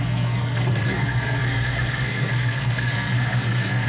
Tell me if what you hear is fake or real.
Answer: fake